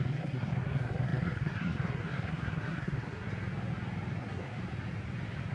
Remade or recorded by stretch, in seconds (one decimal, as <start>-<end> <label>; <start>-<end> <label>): 0.0-3.3 remade; 3.3-4.1 recorded; 4.1-4.6 remade; 4.6-5.5 recorded